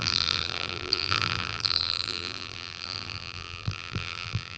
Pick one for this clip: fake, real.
fake